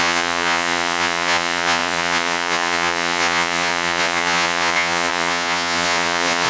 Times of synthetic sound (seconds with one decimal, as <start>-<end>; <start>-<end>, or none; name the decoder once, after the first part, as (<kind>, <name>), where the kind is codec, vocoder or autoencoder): 0.0-6.5 (vocoder, Vocos)